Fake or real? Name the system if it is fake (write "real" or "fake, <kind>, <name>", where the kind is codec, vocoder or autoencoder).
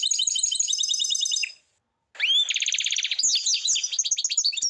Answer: real